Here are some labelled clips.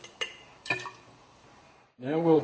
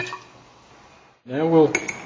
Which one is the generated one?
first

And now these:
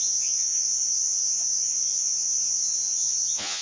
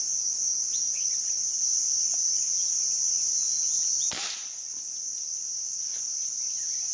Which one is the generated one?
first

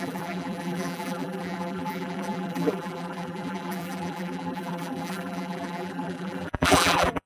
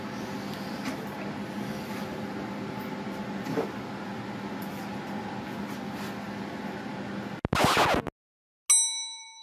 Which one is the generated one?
first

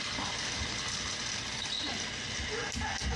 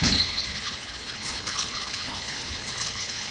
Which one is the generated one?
second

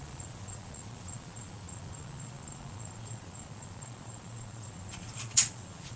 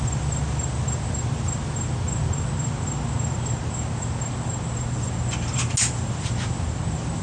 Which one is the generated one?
first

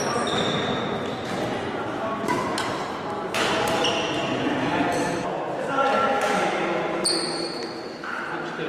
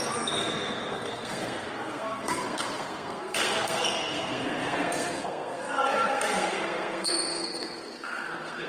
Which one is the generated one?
second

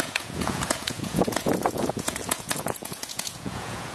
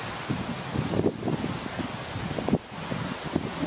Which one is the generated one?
first